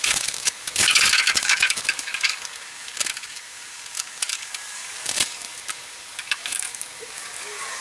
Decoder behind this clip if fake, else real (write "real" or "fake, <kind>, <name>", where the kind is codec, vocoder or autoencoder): fake, codec, DAC